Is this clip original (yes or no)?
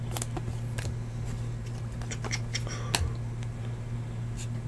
yes